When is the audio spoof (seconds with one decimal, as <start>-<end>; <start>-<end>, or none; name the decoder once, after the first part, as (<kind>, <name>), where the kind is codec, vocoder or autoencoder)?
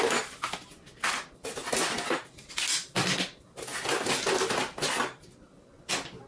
none